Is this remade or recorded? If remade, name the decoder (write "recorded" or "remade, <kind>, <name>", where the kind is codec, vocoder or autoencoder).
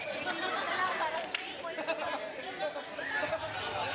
recorded